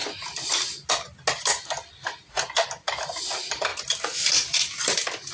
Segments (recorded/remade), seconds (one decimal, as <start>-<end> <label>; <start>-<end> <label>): 0.0-5.3 recorded